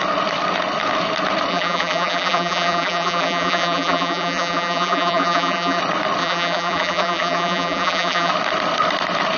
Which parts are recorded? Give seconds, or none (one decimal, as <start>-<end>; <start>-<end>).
0.0-1.5; 5.8-6.2; 8.3-9.4